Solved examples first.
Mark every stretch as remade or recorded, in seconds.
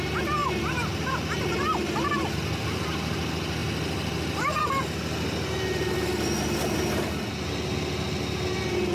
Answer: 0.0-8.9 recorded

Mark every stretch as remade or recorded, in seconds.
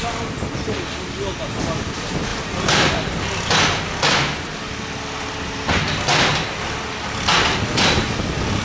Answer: 0.0-2.3 recorded; 2.3-2.9 remade; 2.9-8.6 recorded